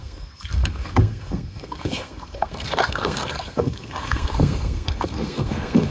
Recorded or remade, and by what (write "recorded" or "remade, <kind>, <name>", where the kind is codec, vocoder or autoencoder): remade, codec, SNAC